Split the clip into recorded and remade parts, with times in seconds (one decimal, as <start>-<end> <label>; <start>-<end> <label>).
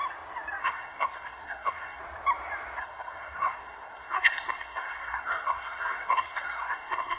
0.0-0.6 recorded; 0.6-2.0 remade; 2.0-2.8 recorded; 2.8-7.2 remade